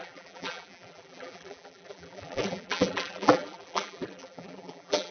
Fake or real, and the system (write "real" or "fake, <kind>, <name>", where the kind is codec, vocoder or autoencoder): fake, vocoder, BigVGAN v2